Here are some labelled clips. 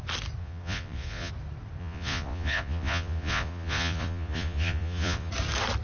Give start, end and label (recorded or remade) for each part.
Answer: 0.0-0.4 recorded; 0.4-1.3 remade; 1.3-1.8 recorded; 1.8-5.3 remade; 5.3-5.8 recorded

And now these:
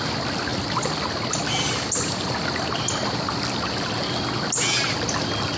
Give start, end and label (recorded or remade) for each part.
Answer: 0.0-5.6 recorded

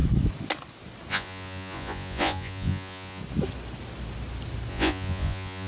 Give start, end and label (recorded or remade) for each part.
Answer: 0.0-1.1 recorded; 1.1-3.2 remade; 3.2-4.7 recorded; 4.7-5.7 remade

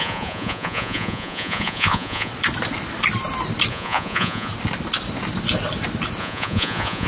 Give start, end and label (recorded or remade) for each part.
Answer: 0.0-2.3 remade; 2.3-3.7 recorded; 3.7-4.5 remade; 4.5-6.2 recorded; 6.2-7.1 remade

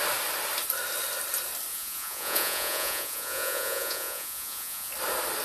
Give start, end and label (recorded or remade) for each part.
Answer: 0.0-1.7 recorded; 1.7-4.9 remade; 4.9-5.4 recorded

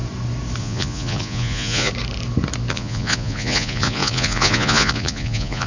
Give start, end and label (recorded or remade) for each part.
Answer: 0.0-0.6 recorded; 0.6-1.9 remade; 1.9-2.7 recorded; 2.7-5.7 remade

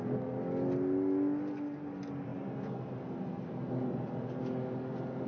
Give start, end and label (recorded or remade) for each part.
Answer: 0.0-5.3 recorded

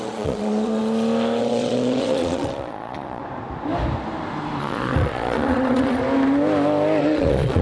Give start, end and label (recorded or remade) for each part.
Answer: 0.0-0.8 remade; 0.8-1.4 recorded; 1.4-3.2 remade; 3.2-4.6 recorded; 4.6-6.0 remade; 6.0-7.0 recorded; 7.0-7.6 remade